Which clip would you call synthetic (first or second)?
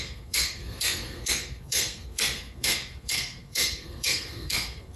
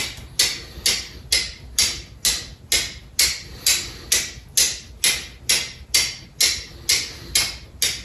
first